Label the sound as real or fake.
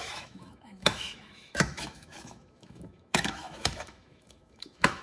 fake